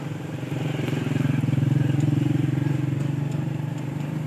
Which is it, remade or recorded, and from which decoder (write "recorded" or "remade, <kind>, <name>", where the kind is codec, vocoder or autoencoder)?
remade, vocoder, BigVGAN v2